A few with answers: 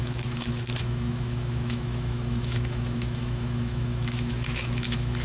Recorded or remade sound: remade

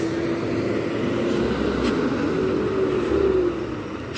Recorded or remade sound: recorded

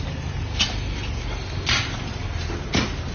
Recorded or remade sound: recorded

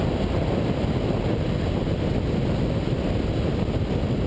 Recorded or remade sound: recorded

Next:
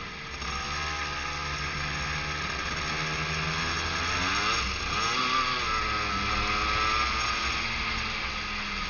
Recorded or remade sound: recorded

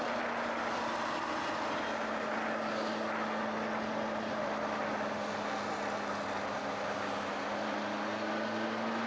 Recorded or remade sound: recorded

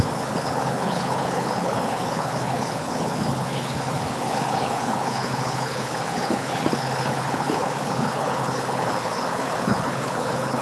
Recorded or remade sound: remade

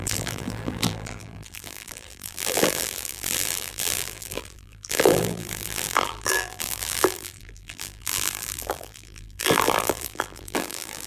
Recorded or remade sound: remade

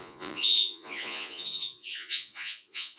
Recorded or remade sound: remade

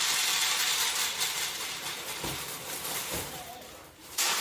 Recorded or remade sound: remade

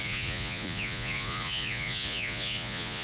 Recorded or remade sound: remade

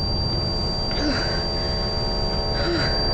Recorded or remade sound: recorded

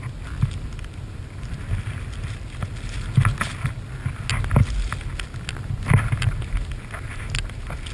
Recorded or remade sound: recorded